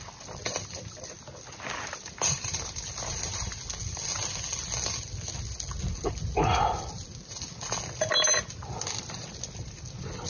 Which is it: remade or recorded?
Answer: recorded